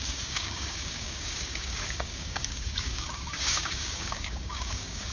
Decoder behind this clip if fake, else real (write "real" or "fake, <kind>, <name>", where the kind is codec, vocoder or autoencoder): fake, codec, DAC